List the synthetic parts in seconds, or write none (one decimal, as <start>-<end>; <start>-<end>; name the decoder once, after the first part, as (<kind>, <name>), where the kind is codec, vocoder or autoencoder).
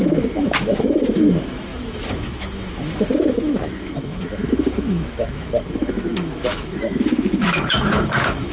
0.0-8.5 (autoencoder, DAC-VAE)